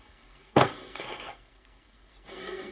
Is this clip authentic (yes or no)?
no